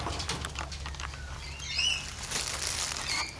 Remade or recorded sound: recorded